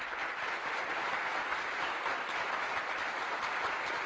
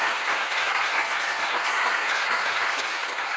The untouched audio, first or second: first